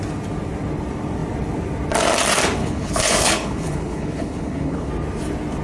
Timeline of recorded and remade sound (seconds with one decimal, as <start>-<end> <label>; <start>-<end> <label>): 0.0-2.6 recorded; 2.6-4.9 remade; 4.9-5.6 recorded